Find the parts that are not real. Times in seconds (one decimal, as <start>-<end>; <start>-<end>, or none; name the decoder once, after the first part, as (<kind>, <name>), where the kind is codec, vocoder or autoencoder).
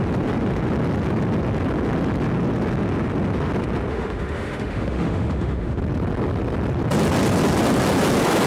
3.9-5.8 (autoencoder, DAC-VAE)